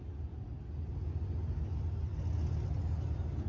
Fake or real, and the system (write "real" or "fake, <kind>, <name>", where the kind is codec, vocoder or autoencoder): real